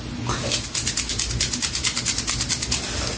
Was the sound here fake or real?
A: real